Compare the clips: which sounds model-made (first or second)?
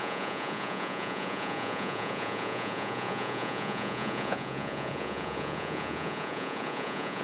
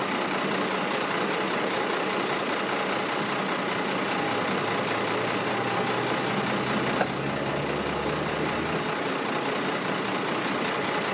first